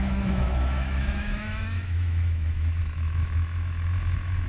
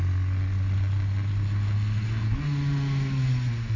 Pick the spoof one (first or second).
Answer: first